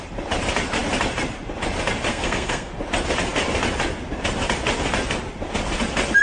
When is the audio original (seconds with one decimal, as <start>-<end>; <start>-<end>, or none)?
0.0-2.1; 2.7-6.2